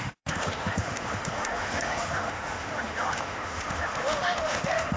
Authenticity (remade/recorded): remade